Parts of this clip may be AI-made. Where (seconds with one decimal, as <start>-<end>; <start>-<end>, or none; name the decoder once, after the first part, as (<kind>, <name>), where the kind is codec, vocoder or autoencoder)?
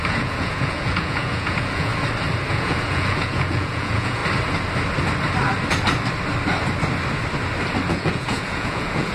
0.0-1.9 (vocoder, Vocos); 2.5-4.2; 7.9-9.1